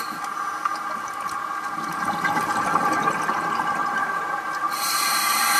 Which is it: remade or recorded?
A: recorded